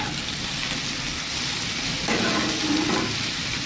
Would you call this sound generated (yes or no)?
no